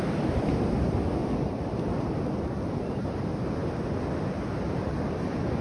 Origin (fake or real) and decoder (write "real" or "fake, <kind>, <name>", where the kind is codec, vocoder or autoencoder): real